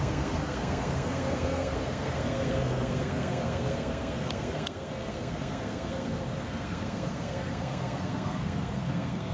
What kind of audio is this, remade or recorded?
remade